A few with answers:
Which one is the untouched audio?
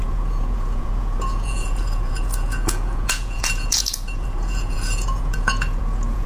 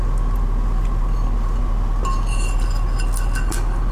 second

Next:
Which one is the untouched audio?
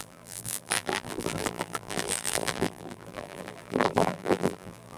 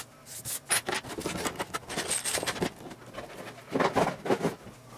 second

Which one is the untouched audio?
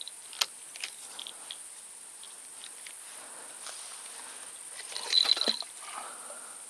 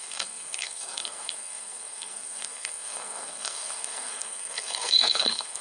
first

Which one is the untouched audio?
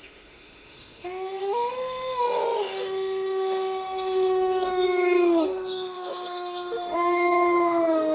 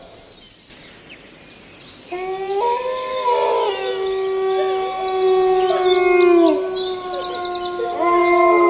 second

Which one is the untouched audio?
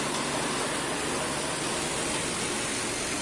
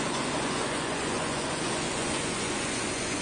first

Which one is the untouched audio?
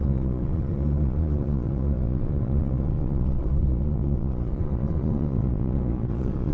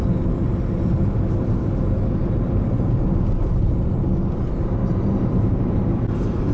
second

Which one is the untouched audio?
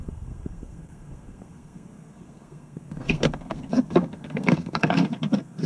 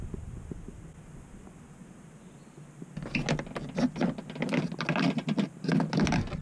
second